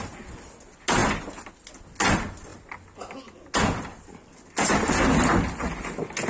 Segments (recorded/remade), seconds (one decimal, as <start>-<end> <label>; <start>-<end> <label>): 0.0-6.3 recorded